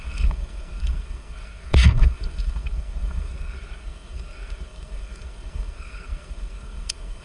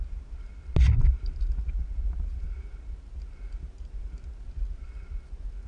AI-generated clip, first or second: first